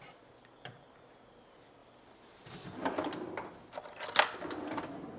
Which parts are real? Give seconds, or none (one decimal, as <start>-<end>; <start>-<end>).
0.0-5.2